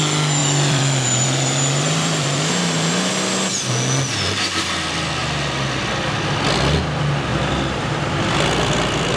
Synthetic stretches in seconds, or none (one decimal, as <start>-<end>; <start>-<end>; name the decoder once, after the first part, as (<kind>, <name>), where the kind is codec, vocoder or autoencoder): 0.4-2.5 (vocoder, BigVGAN v2); 7.3-9.2